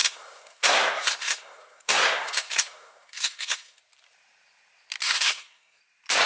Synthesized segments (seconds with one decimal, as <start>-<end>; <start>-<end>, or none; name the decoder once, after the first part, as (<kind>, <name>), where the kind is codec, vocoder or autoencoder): 0.0-3.8 (codec, SNAC); 5.0-5.8

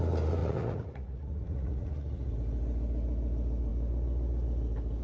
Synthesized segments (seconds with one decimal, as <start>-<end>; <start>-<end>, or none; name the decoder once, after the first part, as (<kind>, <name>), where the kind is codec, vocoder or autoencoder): 0.4-2.3 (vocoder, Vocos)